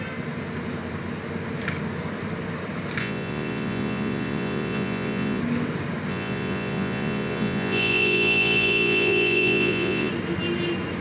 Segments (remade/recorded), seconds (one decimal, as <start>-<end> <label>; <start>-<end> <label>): 0.0-3.0 recorded; 3.0-5.4 remade; 5.4-6.1 recorded; 6.1-10.1 remade; 10.1-11.0 recorded